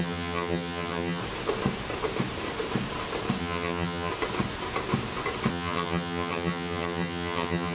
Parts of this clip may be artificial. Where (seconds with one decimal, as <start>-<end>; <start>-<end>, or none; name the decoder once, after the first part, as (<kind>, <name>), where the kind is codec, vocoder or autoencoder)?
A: 0.0-1.2 (vocoder, HiFi-GAN); 3.4-4.1; 5.5-7.7